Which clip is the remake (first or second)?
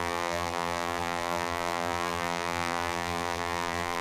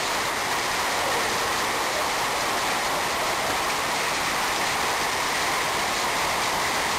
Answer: first